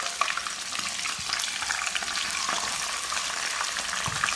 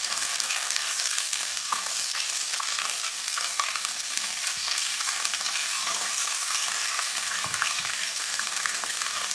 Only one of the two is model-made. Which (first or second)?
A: second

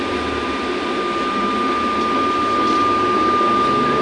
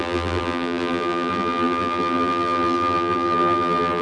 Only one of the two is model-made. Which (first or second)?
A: second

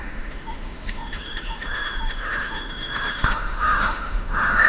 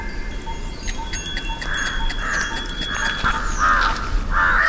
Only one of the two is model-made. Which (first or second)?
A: first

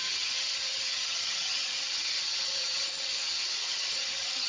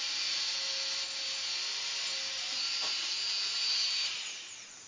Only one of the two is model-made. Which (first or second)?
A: first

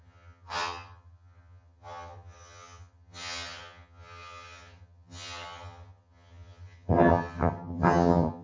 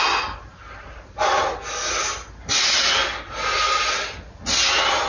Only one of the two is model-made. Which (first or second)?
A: first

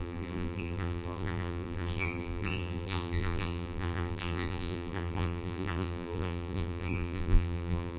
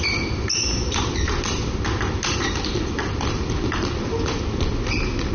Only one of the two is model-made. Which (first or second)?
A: first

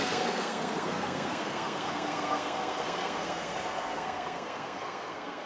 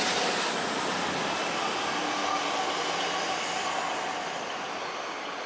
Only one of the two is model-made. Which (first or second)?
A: first